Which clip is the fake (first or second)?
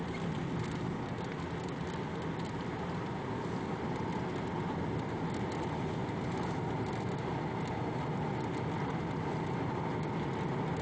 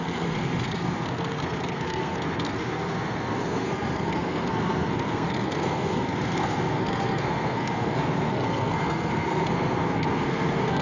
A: second